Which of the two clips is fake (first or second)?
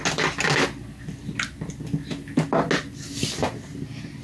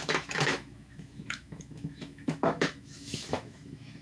second